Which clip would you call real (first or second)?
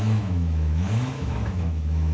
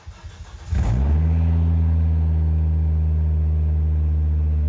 second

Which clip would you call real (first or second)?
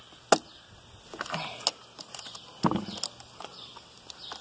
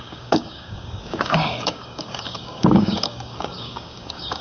first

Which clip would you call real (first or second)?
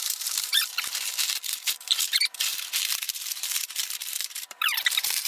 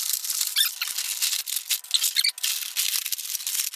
second